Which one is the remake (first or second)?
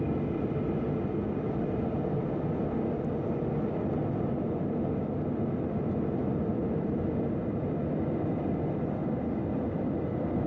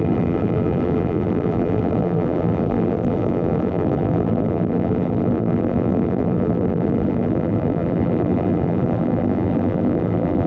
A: second